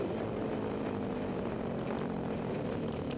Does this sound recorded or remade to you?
remade